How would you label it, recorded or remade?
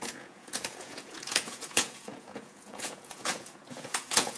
remade